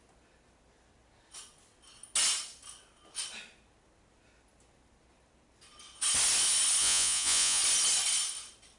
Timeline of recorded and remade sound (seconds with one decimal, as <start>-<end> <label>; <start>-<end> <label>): 0.0-6.8 recorded; 6.8-7.6 remade; 7.6-8.8 recorded